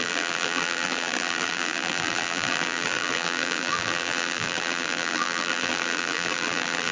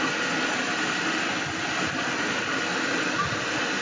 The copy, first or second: first